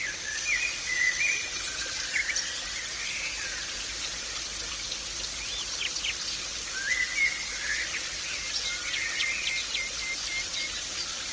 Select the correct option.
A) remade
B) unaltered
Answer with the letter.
B